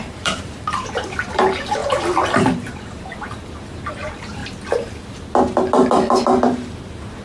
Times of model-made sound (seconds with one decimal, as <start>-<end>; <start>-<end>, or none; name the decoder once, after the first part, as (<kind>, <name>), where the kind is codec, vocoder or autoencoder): 0.0-1.8 (vocoder, BigVGAN v2); 2.4-4.4; 6.8-7.2

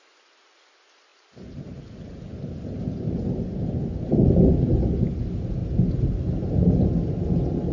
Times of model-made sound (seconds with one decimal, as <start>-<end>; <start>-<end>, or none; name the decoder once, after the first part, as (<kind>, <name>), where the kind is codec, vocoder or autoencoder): 1.1-1.8 (vocoder, BigVGAN v2); 5.6-6.4

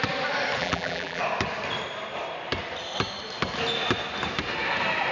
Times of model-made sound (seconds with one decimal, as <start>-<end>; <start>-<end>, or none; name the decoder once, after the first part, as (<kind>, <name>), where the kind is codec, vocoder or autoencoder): 0.6-1.2 (vocoder, BigVGAN v2)

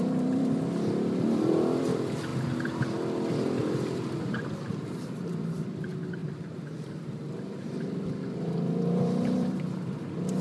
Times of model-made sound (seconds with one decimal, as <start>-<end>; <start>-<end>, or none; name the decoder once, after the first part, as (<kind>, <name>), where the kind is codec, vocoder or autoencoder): 0.0-10.4 (vocoder, BigVGAN v2)

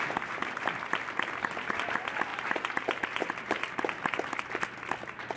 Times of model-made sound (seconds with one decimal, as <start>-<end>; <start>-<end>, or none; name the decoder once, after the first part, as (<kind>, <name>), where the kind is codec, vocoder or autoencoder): 2.3-3.3 (vocoder, BigVGAN v2)

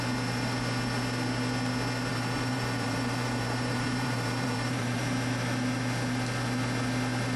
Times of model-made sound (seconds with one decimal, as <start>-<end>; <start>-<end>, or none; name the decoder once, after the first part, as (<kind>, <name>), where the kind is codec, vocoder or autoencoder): 2.1-5.0 (vocoder, BigVGAN v2)

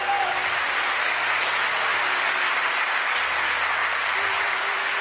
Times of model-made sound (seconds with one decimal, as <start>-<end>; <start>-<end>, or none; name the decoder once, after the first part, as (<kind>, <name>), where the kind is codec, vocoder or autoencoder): 1.9-3.1 (vocoder, BigVGAN v2); 3.8-5.0